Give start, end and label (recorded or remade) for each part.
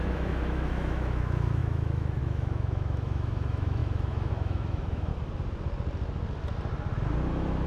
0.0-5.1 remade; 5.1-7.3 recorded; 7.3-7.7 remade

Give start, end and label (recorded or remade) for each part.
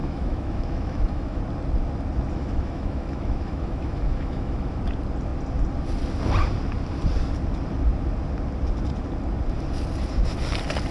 0.0-1.4 remade; 1.4-2.3 recorded; 2.3-4.8 remade; 4.8-10.9 recorded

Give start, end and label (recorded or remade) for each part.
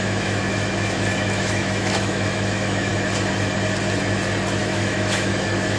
0.0-2.9 remade; 2.9-4.6 recorded; 4.6-5.8 remade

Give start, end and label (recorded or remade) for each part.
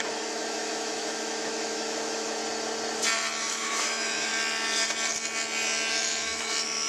0.0-2.4 remade; 2.4-3.4 recorded; 3.4-4.3 remade; 4.3-5.9 recorded; 5.9-6.9 remade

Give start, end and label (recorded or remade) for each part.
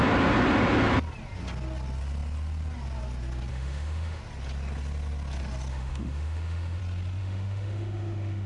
0.0-3.5 recorded; 3.5-4.2 remade; 4.2-5.7 recorded; 5.7-6.8 remade; 6.8-7.2 recorded; 7.2-8.5 remade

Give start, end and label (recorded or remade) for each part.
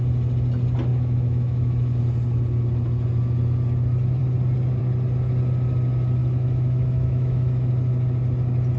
0.0-0.9 recorded; 0.9-2.0 remade; 2.0-6.2 recorded; 6.2-7.7 remade; 7.7-8.8 recorded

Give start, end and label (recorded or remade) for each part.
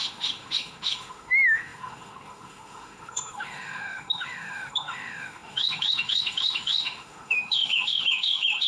0.0-8.7 remade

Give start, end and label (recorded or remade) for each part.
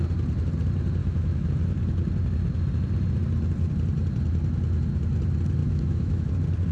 0.0-1.0 recorded; 1.0-1.5 remade; 1.5-5.6 recorded; 5.6-6.3 remade; 6.3-6.7 recorded